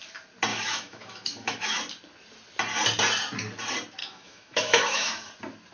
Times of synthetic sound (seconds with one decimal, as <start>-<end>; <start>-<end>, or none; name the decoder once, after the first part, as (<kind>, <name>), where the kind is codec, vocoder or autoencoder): 0.5-1.8 (autoencoder, DAC-VAE); 4.0-5.3